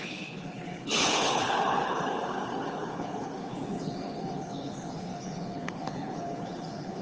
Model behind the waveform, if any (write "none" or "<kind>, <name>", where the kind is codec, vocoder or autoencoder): codec, HILCodec